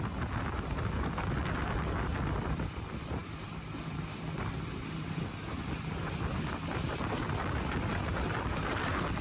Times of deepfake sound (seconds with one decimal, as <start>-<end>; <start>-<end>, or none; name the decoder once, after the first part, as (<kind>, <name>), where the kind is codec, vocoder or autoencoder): none